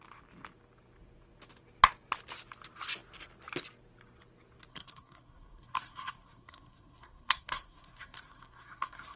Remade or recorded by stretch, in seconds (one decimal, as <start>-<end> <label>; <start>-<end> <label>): 0.0-4.7 recorded; 4.7-9.2 remade